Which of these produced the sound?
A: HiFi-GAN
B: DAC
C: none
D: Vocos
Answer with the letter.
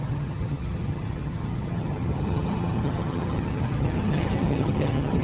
A